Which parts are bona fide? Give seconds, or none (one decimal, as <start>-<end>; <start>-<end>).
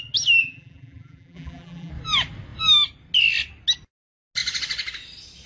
0.0-0.4; 1.9-5.5